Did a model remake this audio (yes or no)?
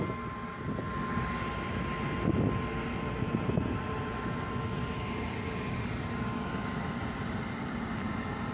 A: no